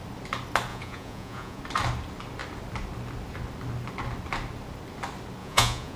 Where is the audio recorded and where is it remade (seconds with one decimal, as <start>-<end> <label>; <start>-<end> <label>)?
0.0-0.7 recorded; 0.7-1.6 remade; 1.6-5.4 recorded; 5.4-6.0 remade